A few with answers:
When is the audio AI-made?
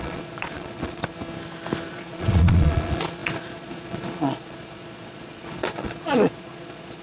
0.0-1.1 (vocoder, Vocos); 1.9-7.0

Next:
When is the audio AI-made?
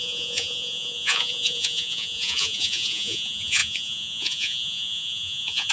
0.0-5.7 (vocoder, Vocos)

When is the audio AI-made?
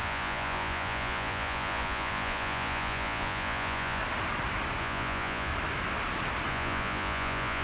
0.0-4.0 (vocoder, Vocos); 4.8-5.5; 6.5-7.6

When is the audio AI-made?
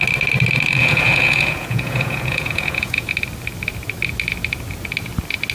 0.8-3.1 (vocoder, Vocos)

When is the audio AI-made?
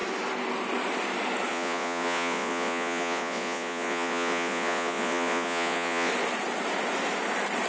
1.5-6.1 (vocoder, Vocos)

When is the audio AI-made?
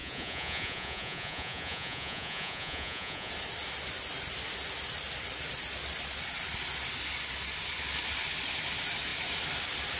0.0-3.3 (vocoder, Vocos)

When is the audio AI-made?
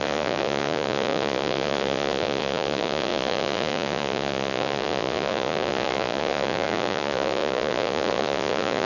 0.0-8.9 (vocoder, Vocos)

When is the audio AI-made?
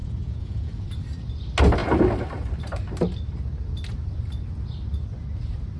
0.0-0.9 (vocoder, Vocos)